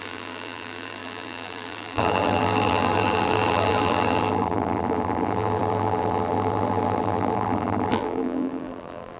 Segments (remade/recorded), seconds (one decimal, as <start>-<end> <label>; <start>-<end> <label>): 0.0-9.2 remade